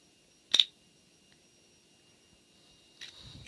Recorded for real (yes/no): yes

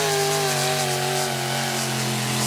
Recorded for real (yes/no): yes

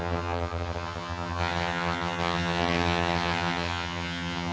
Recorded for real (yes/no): no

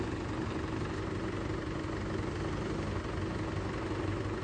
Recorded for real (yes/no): yes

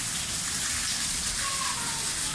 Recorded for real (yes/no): yes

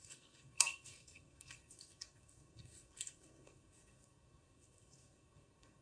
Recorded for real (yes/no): no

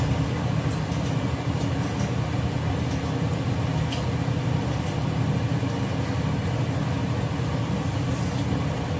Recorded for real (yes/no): yes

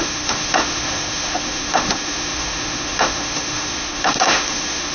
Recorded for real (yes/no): no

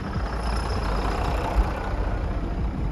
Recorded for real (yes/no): yes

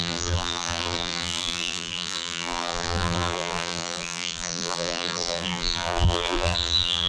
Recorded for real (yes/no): no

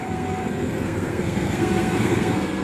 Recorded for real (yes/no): no